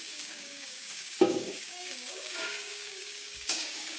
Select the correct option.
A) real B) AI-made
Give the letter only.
B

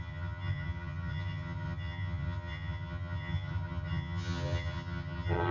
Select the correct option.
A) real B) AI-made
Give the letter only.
B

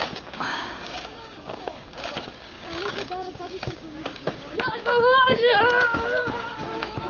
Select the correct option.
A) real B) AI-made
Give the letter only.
B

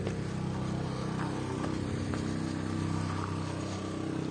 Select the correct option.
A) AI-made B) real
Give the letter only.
B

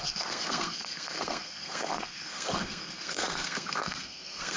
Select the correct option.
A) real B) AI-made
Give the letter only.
B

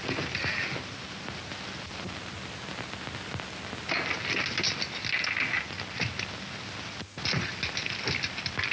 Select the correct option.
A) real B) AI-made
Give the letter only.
A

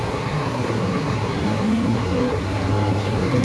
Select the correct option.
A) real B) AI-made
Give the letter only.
B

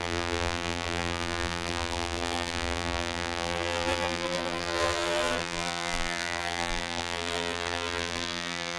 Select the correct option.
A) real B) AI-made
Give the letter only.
B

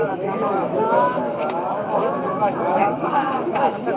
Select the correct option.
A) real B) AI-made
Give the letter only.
B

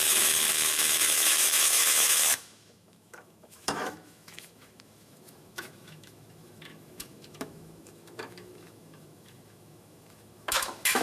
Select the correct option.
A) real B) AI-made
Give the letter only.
B